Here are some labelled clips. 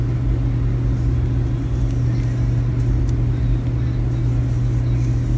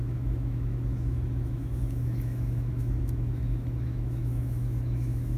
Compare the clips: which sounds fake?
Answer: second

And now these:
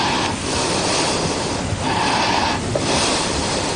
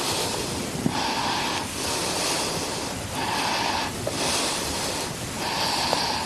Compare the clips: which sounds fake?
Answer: second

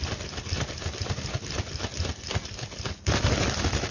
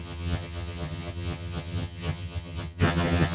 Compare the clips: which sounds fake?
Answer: second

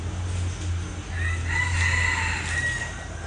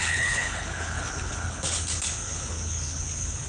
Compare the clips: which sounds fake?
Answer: second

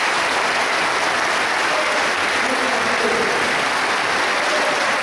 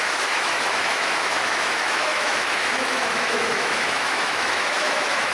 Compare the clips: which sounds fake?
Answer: second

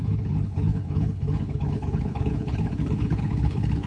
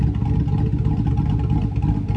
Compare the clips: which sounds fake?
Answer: first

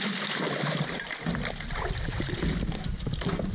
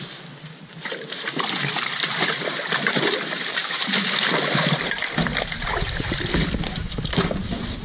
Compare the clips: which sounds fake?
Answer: second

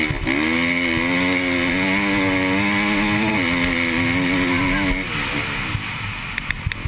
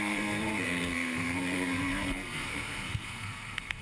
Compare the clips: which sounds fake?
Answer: second